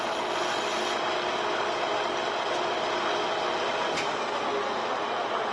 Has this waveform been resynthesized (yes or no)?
no